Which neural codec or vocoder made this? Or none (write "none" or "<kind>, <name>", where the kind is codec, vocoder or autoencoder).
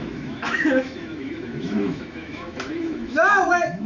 autoencoder, DAC-VAE